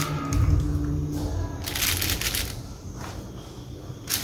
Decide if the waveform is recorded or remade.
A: recorded